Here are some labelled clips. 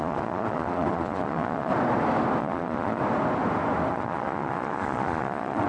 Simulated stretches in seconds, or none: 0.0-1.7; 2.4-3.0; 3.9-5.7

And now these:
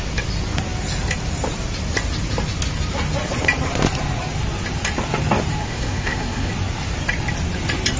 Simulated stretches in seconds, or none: 5.6-6.5

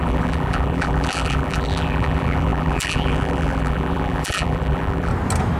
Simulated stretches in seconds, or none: 0.0-5.1